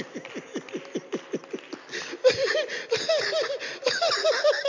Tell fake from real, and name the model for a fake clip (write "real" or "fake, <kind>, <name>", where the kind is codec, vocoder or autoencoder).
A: real